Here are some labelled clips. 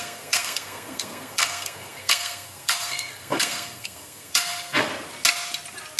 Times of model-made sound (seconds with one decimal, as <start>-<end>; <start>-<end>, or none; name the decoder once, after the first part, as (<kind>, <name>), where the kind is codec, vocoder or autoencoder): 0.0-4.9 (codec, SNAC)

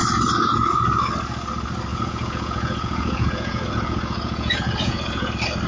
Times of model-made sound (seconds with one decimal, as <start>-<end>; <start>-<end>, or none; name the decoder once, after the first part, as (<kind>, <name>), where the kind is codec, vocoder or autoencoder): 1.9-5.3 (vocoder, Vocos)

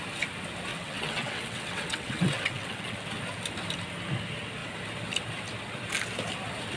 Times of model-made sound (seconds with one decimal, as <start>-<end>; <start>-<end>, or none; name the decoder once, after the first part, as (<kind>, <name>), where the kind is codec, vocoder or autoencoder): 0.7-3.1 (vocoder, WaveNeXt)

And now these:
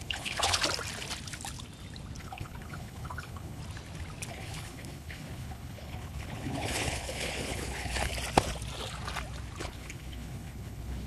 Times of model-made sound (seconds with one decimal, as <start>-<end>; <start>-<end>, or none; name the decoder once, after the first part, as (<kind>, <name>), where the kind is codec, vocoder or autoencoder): 0.0-0.6 (codec, HILCodec); 2.2-3.6; 4.3-8.1; 9.6-11.1